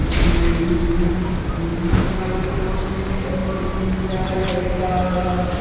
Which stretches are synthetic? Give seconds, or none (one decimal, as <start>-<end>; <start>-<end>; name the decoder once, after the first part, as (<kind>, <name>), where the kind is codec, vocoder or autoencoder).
none